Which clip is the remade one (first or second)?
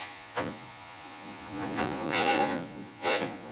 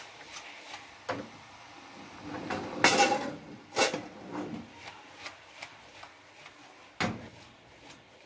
first